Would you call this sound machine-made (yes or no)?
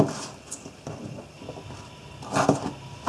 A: no